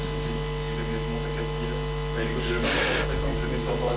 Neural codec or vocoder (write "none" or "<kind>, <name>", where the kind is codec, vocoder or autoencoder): none